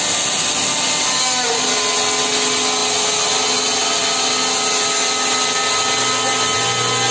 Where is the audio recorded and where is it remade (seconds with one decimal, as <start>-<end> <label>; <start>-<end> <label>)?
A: 0.0-7.1 recorded